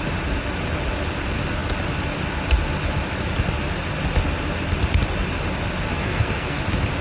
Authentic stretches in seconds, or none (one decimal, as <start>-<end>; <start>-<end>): 0.0-5.9; 6.6-7.0